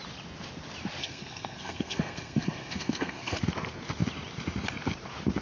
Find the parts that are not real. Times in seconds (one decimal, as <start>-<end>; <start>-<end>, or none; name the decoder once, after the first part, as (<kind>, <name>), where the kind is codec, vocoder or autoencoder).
1.0-3.4 (codec, SNAC)